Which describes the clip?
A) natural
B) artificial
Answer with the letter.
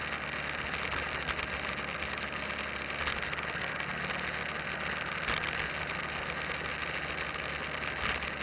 A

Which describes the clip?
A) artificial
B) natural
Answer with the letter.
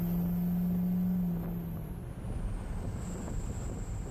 B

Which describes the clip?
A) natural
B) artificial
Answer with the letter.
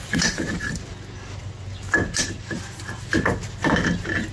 A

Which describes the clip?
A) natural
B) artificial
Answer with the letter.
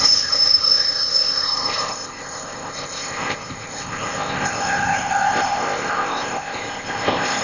B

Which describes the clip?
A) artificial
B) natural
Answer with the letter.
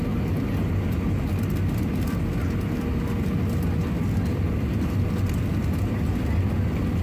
B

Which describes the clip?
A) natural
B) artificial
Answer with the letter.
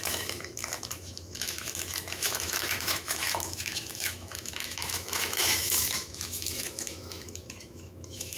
B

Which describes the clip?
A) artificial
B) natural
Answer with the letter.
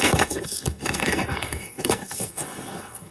A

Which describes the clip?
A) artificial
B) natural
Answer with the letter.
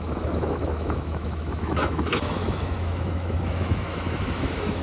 A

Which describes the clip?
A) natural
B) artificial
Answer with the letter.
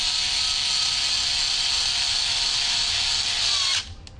A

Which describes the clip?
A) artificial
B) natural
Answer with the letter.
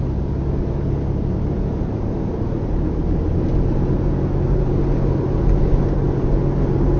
B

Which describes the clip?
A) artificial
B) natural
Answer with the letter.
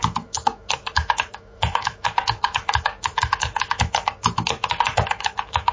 A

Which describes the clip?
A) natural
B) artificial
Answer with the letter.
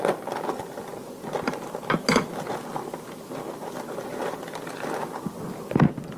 A